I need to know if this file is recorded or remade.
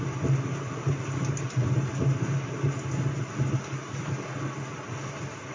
recorded